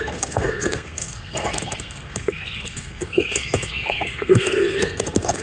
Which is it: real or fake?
fake